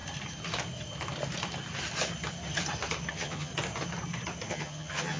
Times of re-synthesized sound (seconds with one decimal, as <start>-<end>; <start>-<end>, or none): 3.1-3.5; 4.5-5.2